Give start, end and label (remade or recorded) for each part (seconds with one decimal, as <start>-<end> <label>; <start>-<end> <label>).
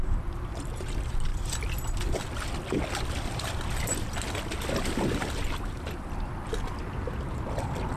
0.0-8.0 recorded